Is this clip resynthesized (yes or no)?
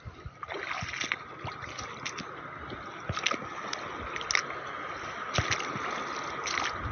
no